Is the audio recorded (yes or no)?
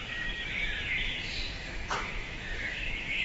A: no